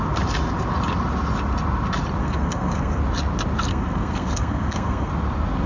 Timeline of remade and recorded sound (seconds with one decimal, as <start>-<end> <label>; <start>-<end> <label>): 0.0-2.2 recorded; 2.2-3.0 remade; 3.0-3.7 recorded; 3.7-5.1 remade; 5.1-5.7 recorded